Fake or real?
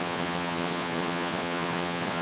fake